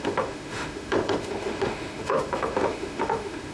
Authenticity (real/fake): fake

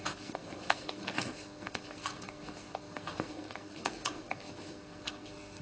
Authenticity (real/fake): fake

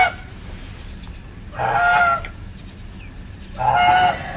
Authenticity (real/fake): real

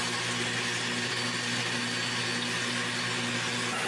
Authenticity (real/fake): real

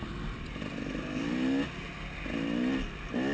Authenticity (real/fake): real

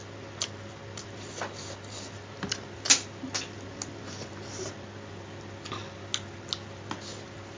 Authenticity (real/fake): real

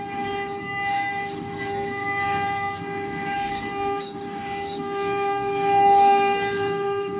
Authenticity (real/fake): fake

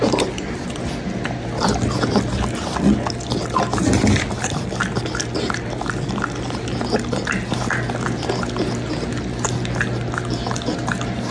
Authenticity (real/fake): real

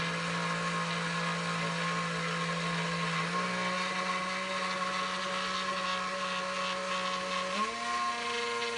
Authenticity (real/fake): real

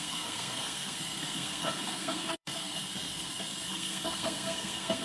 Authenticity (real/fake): fake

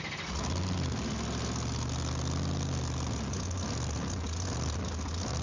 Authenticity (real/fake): real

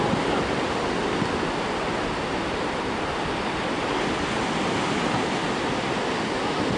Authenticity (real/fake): real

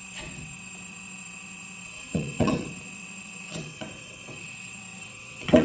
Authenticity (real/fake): fake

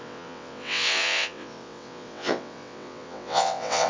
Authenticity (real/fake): fake